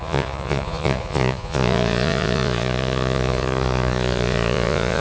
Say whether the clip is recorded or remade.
remade